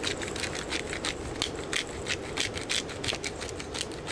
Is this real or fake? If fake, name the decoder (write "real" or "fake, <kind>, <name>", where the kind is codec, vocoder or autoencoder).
real